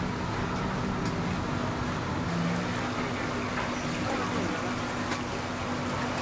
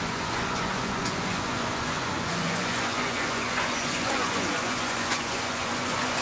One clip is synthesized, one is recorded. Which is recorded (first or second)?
first